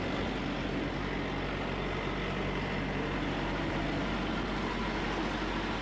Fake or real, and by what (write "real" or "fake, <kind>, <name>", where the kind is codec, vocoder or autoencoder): real